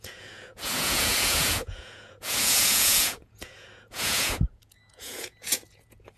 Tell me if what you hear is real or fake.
fake